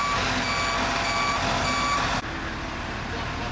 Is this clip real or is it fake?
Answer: real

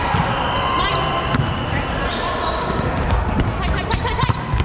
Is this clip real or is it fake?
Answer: real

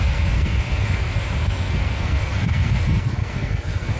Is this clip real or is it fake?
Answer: fake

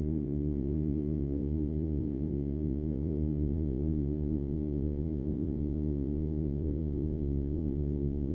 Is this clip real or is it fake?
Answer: fake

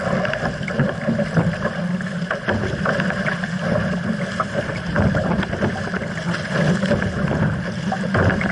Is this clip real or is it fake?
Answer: real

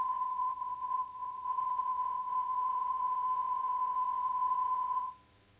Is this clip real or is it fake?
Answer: fake